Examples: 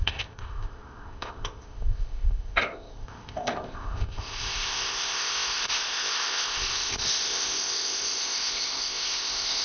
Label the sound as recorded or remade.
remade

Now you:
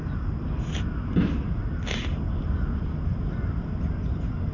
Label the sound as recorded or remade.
recorded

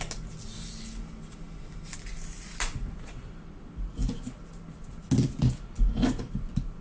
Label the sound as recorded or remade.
recorded